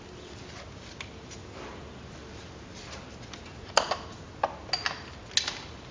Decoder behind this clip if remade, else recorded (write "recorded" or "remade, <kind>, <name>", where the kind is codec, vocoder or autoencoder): recorded